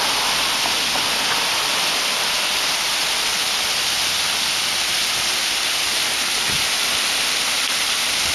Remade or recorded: recorded